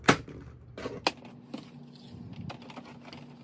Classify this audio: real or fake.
real